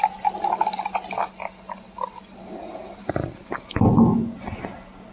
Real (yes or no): yes